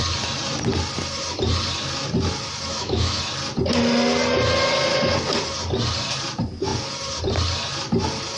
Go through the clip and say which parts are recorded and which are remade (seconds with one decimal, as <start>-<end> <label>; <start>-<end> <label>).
0.0-2.7 recorded; 2.7-3.2 remade; 3.2-8.4 recorded